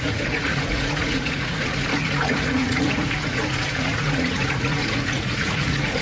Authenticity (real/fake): fake